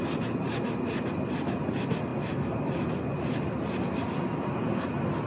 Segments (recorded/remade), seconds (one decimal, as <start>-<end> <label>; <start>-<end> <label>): 0.0-5.3 recorded